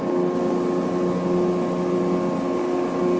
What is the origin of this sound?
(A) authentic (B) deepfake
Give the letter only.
A